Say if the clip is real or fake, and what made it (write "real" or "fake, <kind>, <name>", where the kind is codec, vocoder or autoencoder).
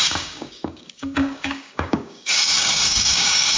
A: fake, codec, DAC